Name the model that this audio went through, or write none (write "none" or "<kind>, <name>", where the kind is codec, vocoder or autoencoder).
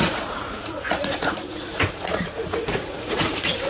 vocoder, Vocos